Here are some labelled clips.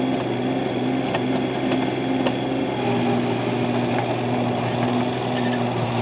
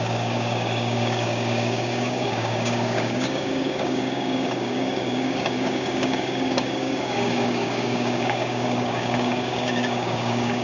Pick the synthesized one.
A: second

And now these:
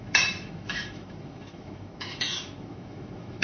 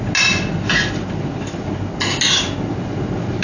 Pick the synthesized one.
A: first